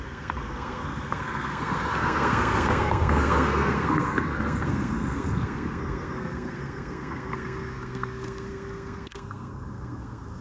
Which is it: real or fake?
fake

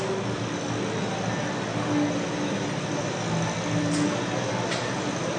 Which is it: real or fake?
real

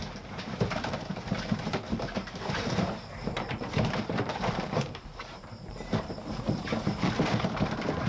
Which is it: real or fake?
fake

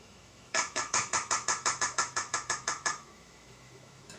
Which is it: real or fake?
fake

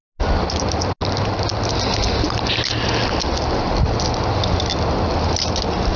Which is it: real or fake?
real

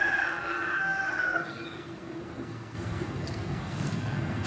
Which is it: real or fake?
fake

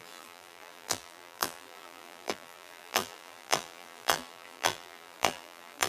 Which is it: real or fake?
fake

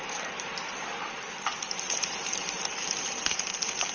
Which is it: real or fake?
fake